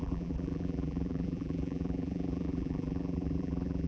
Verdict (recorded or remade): remade